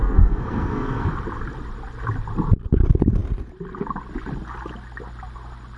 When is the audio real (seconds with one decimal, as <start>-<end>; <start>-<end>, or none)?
1.1-5.8